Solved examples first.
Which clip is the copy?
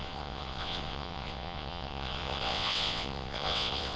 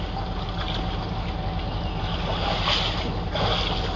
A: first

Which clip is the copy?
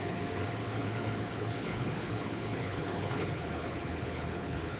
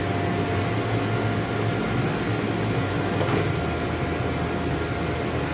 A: first